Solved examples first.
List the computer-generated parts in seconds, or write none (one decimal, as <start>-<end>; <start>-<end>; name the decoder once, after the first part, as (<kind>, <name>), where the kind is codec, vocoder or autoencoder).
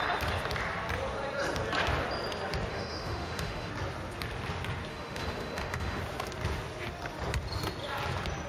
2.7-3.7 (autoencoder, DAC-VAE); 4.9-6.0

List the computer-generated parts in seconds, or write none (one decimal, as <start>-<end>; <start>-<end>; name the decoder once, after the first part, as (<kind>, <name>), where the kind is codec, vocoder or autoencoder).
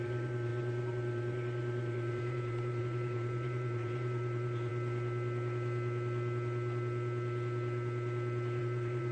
0.0-4.7 (vocoder, BigVGAN v2); 8.6-9.1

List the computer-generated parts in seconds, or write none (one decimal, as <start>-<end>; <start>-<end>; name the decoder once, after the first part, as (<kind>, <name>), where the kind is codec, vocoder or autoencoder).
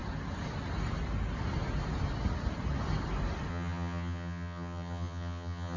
3.5-5.8 (vocoder, HiFi-GAN)